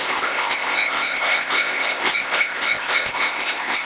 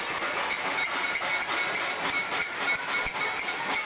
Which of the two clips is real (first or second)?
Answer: second